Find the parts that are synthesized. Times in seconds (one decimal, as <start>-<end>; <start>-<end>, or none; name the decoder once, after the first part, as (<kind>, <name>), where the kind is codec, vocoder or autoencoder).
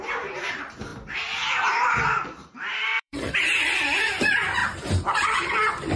0.0-0.9 (vocoder, BigVGAN v2); 1.9-4.6